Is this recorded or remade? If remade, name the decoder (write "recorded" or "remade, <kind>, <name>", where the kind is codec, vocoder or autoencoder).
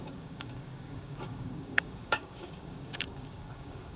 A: remade, codec, DAC